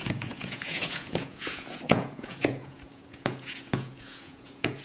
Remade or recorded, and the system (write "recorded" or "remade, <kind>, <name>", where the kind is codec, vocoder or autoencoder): remade, vocoder, Vocos